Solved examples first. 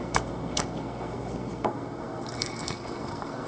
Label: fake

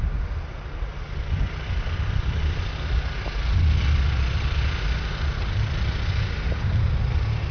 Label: real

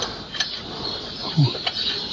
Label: real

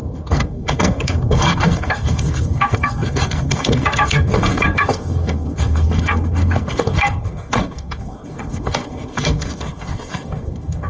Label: fake